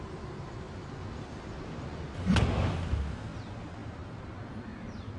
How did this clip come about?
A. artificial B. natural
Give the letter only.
B